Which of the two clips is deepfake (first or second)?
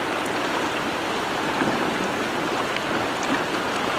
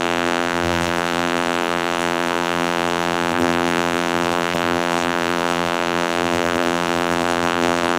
second